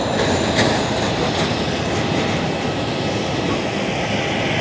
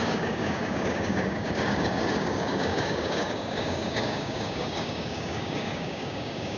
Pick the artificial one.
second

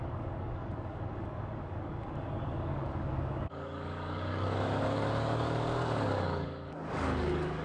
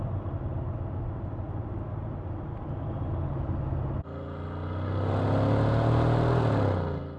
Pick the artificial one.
first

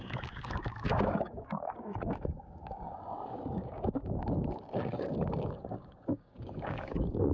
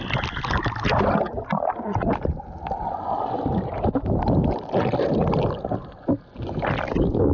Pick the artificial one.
first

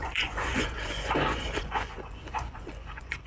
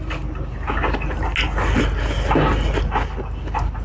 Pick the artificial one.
first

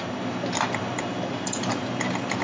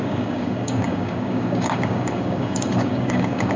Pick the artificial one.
second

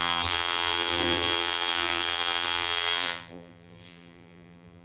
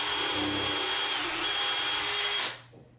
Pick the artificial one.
first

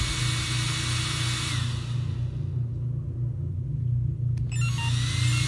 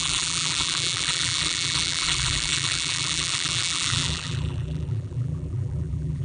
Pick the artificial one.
second